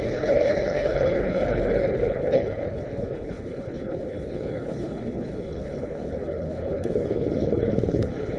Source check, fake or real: fake